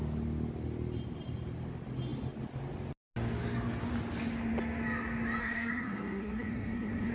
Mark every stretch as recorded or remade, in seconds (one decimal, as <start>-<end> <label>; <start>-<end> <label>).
0.0-5.4 recorded; 5.4-7.1 remade